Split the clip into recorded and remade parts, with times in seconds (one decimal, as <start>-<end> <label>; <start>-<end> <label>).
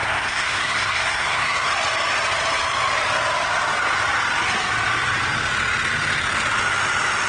0.0-1.7 remade; 1.7-7.3 recorded